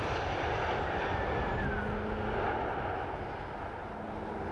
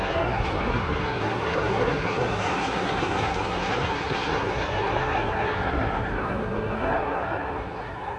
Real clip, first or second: first